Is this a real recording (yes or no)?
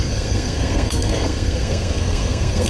no